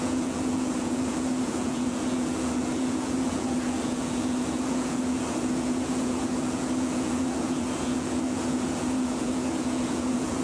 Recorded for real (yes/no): no